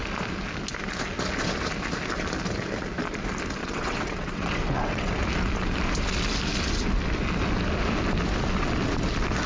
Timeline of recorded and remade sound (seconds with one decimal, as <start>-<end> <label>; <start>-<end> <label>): 0.0-3.6 recorded; 3.6-5.1 remade; 5.1-9.5 recorded